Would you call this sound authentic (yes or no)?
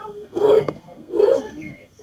no